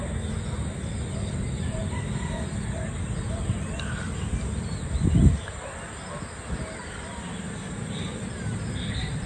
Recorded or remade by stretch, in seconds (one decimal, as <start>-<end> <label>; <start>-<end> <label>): 0.0-9.3 recorded